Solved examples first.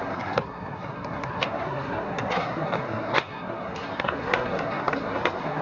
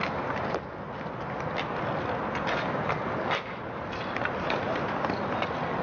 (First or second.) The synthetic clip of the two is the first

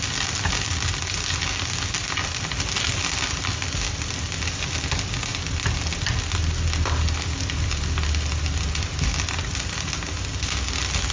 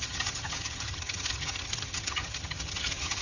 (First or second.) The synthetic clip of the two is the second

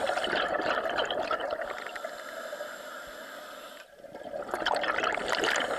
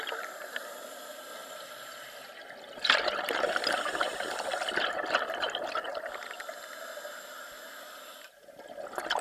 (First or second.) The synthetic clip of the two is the first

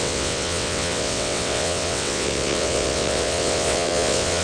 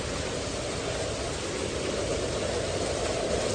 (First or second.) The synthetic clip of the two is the first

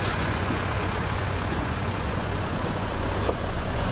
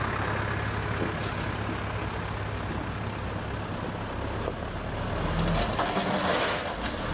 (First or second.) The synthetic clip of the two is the first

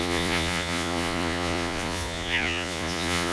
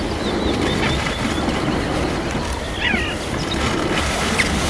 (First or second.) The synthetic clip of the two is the first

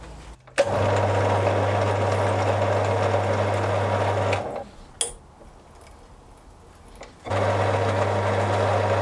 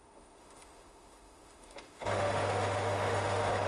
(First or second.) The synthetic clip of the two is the second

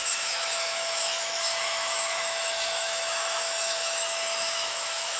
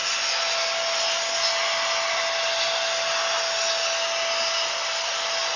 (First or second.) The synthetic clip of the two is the first